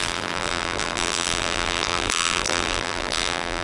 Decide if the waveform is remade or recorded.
remade